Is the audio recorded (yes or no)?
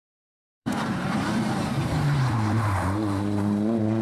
no